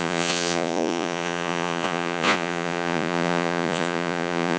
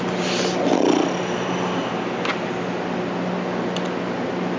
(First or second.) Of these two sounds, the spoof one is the first